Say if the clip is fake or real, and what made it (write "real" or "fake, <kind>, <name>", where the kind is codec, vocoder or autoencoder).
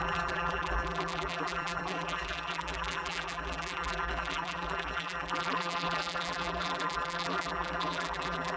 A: fake, vocoder, BigVGAN v2